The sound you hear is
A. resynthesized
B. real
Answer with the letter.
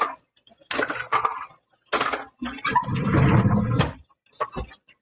B